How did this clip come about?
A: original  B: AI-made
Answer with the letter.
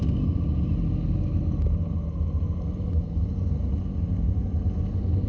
A